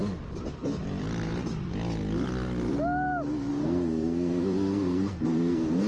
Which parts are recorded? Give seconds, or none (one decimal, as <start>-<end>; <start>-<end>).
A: 0.0-3.5